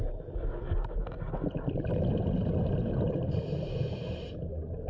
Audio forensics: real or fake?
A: real